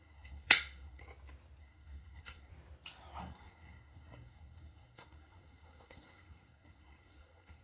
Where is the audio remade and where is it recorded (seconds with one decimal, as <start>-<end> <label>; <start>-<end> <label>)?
0.0-1.0 remade; 1.0-1.6 recorded; 1.6-2.5 remade; 2.5-3.2 recorded; 3.2-7.6 remade